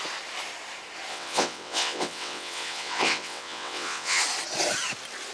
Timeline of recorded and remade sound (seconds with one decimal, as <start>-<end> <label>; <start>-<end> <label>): 0.0-1.1 recorded; 1.1-4.2 remade; 4.2-5.3 recorded